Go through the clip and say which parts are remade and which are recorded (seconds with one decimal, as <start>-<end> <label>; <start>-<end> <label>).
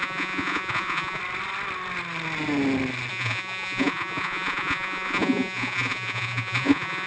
0.0-1.2 remade; 1.2-3.1 recorded; 3.1-7.1 remade